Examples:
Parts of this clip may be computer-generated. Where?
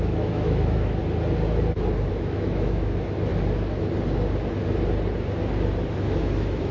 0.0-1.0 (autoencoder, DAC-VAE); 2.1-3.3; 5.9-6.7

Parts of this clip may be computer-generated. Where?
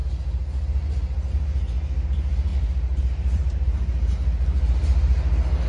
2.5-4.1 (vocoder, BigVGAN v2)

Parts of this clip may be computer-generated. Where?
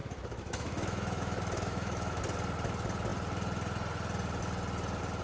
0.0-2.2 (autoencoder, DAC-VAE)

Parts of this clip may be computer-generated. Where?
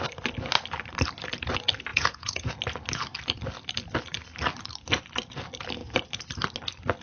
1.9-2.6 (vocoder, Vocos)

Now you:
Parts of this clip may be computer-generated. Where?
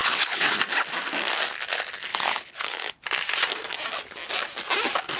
0.0-0.6 (codec, HILCodec); 2.1-2.9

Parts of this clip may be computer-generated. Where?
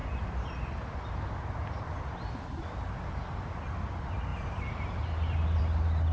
none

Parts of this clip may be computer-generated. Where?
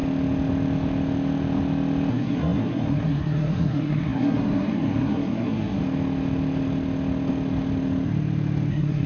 2.1-5.8 (codec, SNAC); 8.7-9.1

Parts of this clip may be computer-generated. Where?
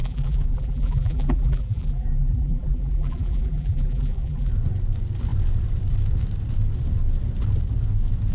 0.0-4.5 (vocoder, BigVGAN v2)